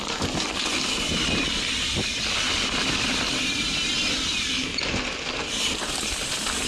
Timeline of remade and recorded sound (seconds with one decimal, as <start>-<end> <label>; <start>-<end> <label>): 0.0-6.7 recorded